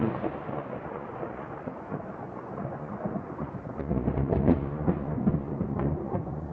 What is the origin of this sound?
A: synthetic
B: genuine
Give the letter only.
A